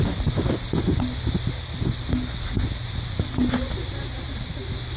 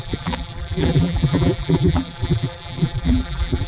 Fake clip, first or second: second